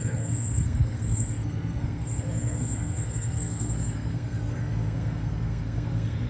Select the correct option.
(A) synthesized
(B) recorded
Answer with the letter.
A